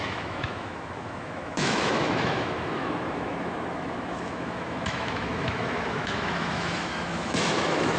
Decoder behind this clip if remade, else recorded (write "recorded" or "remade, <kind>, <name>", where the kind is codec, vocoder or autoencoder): remade, autoencoder, DAC-VAE